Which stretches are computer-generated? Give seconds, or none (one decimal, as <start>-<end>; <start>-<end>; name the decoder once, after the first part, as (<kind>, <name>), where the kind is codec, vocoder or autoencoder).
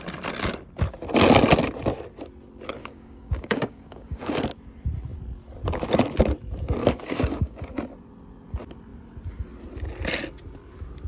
2.8-4.4 (codec, DAC); 6.8-7.8